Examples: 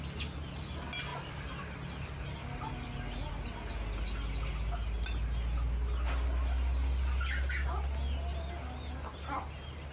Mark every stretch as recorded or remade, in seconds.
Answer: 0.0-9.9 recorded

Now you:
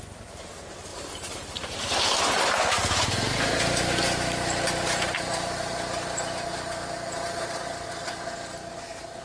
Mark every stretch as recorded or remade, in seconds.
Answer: 0.0-0.9 recorded; 0.9-5.2 remade; 5.2-9.2 recorded

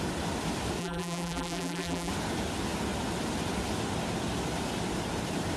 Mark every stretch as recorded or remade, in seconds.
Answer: 0.0-0.8 recorded; 0.8-2.1 remade; 2.1-5.6 recorded

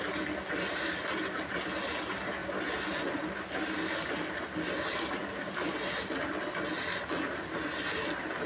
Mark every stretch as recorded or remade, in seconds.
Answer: 0.0-8.5 recorded

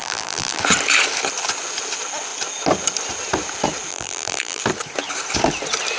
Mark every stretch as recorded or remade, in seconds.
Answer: 0.0-0.6 remade; 0.6-3.9 recorded; 3.9-4.6 remade; 4.6-6.0 recorded

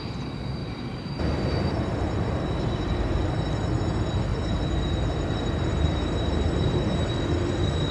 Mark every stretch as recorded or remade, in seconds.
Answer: 0.0-0.6 recorded; 0.6-3.3 remade; 3.3-4.3 recorded; 4.3-7.2 remade; 7.2-7.9 recorded